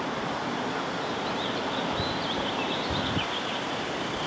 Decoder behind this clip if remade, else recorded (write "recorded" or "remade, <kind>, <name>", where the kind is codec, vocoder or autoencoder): remade, vocoder, BigVGAN v2